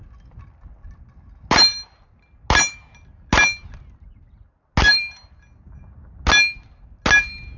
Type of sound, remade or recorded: recorded